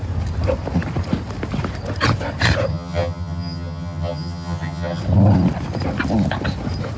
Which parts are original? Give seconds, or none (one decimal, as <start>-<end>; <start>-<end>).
0.0-2.7; 5.0-7.0

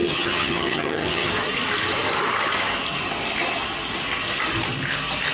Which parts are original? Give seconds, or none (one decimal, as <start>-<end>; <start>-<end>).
1.3-5.3